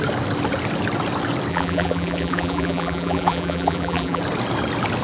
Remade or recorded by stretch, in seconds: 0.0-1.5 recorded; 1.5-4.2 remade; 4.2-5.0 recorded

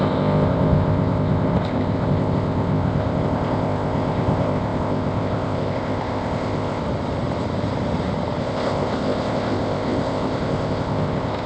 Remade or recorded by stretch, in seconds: 0.0-6.8 remade; 6.8-8.4 recorded; 8.4-11.5 remade

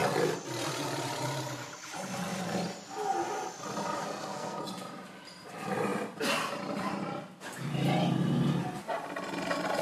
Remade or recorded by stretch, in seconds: 0.0-4.0 recorded; 4.0-4.6 remade; 4.6-9.8 recorded

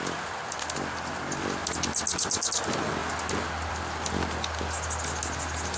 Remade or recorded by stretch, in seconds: 0.0-5.8 recorded

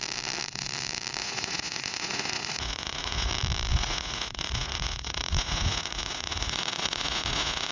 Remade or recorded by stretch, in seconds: 0.0-1.2 recorded; 1.2-3.3 remade; 3.3-3.7 recorded; 3.7-7.7 remade

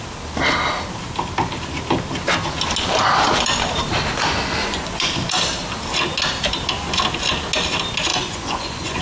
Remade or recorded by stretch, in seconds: 0.0-4.6 recorded; 4.6-5.1 remade; 5.1-8.1 recorded; 8.1-9.0 remade

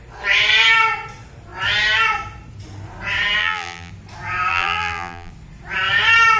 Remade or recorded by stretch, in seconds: 0.0-3.4 recorded; 3.4-3.9 remade; 3.9-4.5 recorded; 4.5-5.3 remade; 5.3-6.4 recorded

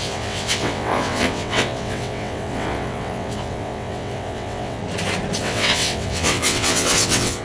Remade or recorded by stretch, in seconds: 0.0-4.8 remade; 4.8-5.4 recorded; 5.4-7.4 remade